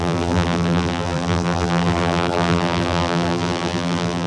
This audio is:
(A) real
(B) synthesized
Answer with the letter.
B